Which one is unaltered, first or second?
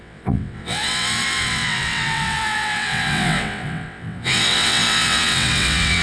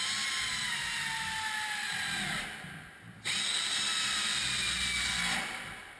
second